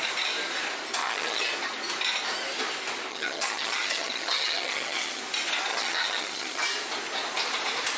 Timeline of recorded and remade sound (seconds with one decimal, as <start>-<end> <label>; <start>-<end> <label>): 0.0-1.0 recorded; 1.0-1.5 remade; 1.5-3.1 recorded; 3.1-5.2 remade; 5.2-5.7 recorded; 5.7-6.6 remade; 6.6-8.0 recorded